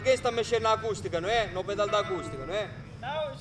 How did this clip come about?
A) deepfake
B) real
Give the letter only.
B